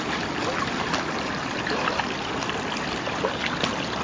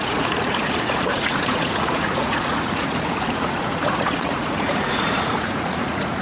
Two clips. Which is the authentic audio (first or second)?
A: first